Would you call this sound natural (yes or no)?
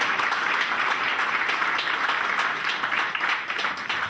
yes